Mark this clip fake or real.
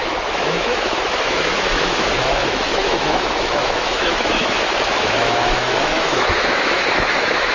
fake